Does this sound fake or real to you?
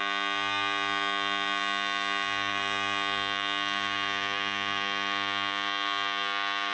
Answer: fake